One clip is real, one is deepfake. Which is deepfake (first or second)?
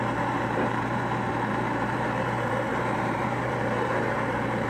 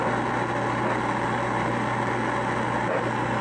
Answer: first